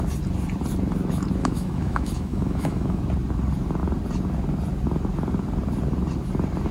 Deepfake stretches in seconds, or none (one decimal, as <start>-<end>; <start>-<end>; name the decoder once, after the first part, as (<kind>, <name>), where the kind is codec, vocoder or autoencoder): 1.4-3.0 (autoencoder, DAC-VAE)

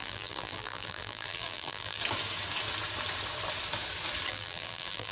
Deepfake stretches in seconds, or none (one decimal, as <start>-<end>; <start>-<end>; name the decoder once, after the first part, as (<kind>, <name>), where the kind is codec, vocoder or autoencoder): 0.0-2.0 (vocoder, BigVGAN v2); 4.3-5.1

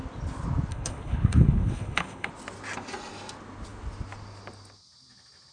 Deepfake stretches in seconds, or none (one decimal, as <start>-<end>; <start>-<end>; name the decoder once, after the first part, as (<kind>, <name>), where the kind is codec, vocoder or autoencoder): 0.7-2.3 (codec, HILCodec)

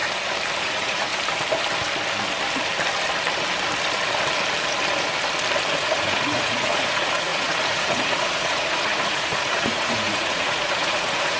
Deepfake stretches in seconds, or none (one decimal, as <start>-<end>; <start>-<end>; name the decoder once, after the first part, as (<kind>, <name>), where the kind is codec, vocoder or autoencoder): 0.6-1.1 (vocoder, Vocos); 5.8-11.4

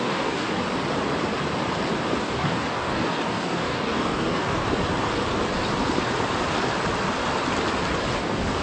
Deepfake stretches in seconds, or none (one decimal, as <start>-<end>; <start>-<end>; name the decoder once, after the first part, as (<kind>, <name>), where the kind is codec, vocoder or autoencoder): 0.0-0.6 (codec, DAC); 2.2-4.6; 8.2-8.6